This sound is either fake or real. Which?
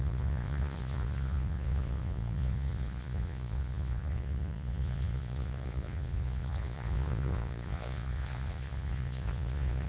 fake